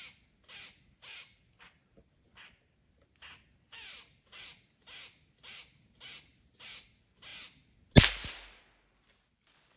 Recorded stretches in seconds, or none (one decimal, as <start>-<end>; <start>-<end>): 0.0-9.8